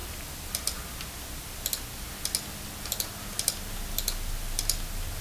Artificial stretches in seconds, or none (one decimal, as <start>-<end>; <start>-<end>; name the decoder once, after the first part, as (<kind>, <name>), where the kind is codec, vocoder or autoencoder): none